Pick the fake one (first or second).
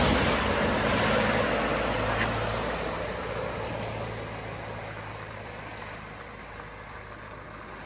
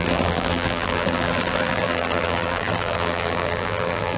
second